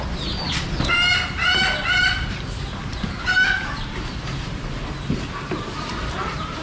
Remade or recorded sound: remade